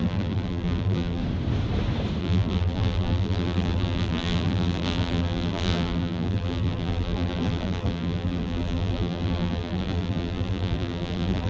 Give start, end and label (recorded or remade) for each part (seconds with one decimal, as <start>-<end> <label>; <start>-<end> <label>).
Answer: 0.0-1.2 remade; 1.2-2.2 recorded; 2.2-11.5 remade